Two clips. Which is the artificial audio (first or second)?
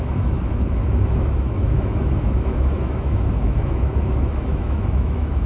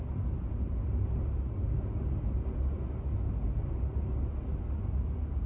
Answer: first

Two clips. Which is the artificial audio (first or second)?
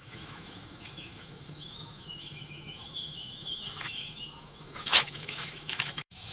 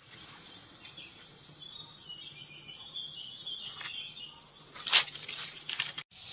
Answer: first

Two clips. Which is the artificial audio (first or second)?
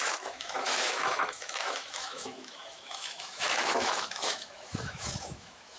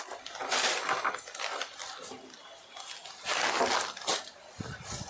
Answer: first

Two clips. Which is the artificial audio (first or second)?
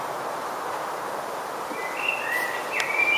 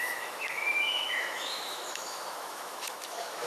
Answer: second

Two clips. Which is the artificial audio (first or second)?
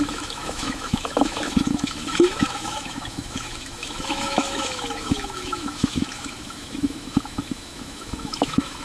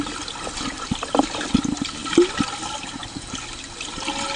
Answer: first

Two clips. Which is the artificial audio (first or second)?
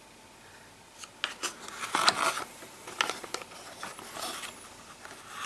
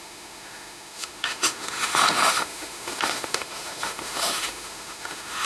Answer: second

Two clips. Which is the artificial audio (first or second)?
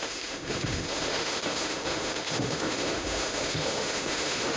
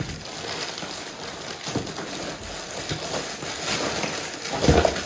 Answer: first